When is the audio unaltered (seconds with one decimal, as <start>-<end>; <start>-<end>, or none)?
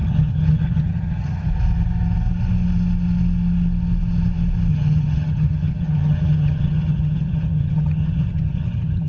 1.5-4.7